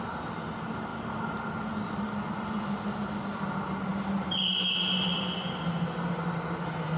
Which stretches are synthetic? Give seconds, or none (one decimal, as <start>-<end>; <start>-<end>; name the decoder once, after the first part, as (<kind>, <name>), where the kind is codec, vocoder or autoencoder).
none